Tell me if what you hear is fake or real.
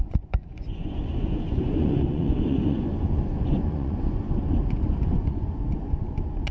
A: fake